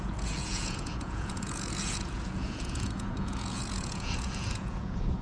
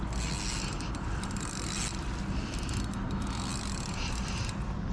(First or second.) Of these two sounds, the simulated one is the first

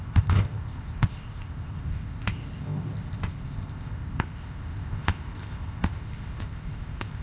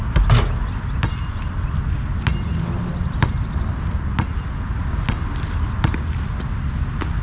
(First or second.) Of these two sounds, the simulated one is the first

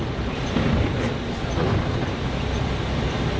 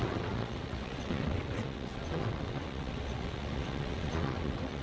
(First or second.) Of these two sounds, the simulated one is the second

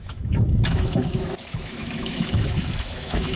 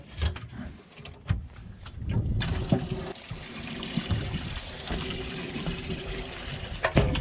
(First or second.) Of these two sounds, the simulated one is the first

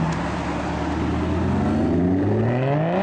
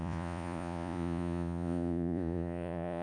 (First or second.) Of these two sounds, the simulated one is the second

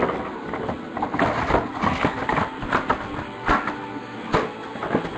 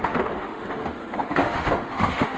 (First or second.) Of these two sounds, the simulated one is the second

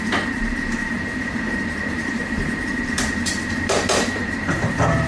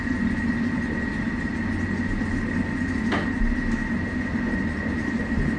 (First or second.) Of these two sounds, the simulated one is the first